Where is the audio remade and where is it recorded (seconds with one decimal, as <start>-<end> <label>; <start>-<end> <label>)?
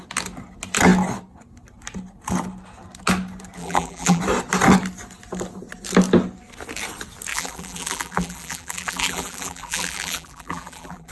0.0-3.6 recorded; 3.6-4.2 remade; 4.2-7.3 recorded; 7.3-11.1 remade